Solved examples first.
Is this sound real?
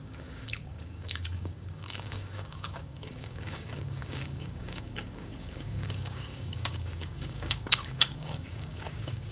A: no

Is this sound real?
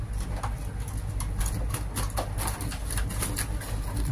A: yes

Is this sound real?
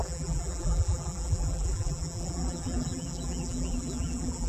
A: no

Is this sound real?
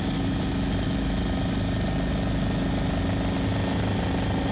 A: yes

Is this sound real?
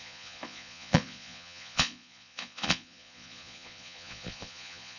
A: no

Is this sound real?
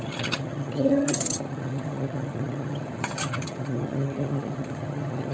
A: no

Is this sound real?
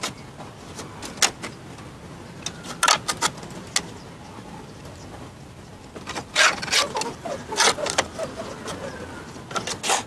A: yes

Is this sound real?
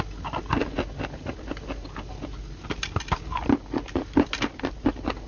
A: yes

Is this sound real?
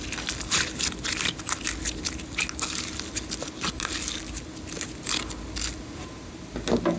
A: yes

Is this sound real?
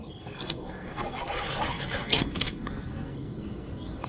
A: no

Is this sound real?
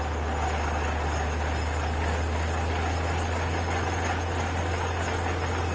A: yes